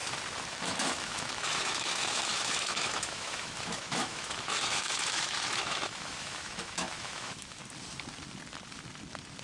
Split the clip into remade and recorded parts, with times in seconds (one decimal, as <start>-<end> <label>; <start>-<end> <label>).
0.0-0.5 recorded; 0.5-7.6 remade; 7.6-9.4 recorded